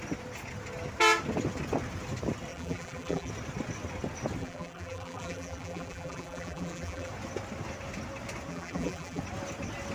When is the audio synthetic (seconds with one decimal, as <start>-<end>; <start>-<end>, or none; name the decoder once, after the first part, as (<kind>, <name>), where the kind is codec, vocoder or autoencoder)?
2.5-3.3 (vocoder, BigVGAN v2); 4.4-7.1; 8.5-9.2